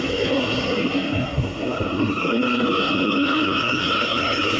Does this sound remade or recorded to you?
remade